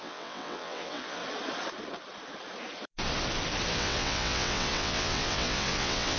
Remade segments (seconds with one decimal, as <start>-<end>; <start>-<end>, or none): 0.0-1.2; 3.7-6.2

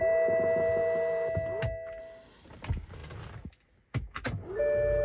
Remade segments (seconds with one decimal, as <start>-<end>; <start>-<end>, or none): none

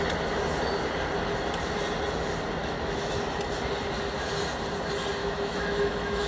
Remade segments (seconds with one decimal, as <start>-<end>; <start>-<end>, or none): 2.6-3.2; 5.2-6.3

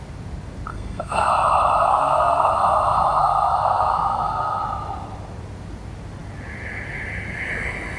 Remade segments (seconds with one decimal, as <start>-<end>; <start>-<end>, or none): 0.7-1.3; 1.9-2.5; 3.2-4.6

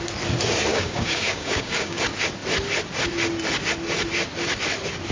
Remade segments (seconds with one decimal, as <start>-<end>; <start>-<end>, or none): 0.7-2.0

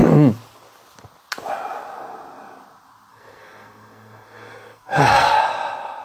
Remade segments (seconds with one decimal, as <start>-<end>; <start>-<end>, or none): 3.1-5.4

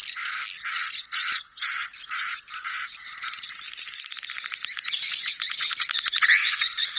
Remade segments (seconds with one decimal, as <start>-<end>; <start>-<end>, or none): 0.8-1.9; 4.8-7.0